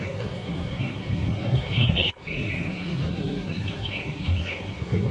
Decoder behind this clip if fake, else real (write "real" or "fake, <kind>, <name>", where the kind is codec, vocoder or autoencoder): fake, codec, SNAC